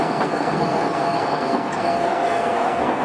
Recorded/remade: remade